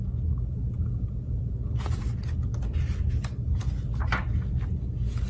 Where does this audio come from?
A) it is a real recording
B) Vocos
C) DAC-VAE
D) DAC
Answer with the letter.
A